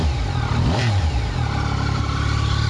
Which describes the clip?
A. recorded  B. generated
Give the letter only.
A